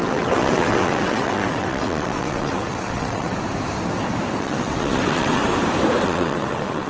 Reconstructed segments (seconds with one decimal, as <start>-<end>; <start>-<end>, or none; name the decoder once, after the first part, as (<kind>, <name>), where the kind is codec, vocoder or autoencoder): 0.0-3.3 (vocoder, WaveNeXt); 4.4-5.4; 6.0-6.9